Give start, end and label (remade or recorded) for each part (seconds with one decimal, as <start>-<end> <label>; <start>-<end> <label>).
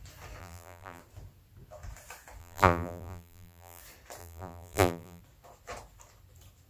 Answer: 0.0-0.4 recorded; 0.4-1.0 remade; 1.0-2.4 recorded; 2.4-3.8 remade; 3.8-4.2 recorded; 4.2-5.2 remade; 5.2-6.7 recorded